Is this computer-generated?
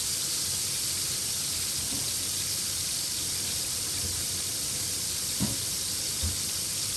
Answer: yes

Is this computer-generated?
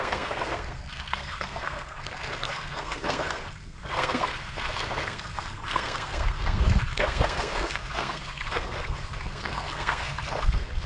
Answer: yes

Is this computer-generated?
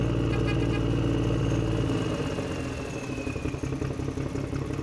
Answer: no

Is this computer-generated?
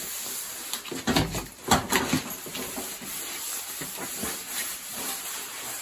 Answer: no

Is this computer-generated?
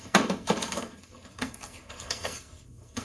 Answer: yes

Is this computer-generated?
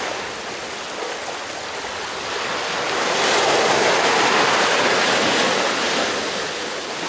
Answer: no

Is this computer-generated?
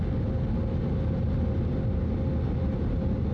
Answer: no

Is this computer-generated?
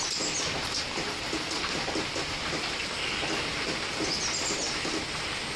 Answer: no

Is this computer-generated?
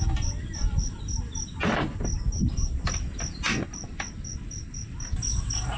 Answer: no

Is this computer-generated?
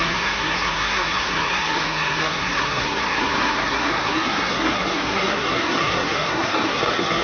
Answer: yes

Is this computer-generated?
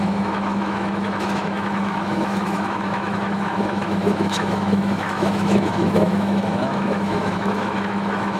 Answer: yes